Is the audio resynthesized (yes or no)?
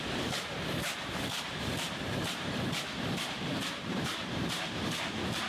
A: yes